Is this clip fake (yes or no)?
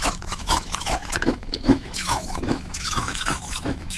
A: yes